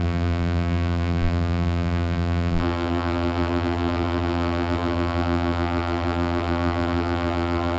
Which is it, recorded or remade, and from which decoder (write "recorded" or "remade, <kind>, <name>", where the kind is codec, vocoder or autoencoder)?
remade, vocoder, BigVGAN v2